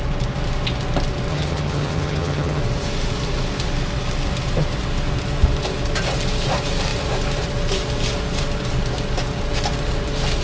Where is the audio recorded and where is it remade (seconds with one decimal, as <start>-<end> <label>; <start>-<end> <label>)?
0.0-1.3 recorded; 1.3-2.6 remade; 2.6-10.4 recorded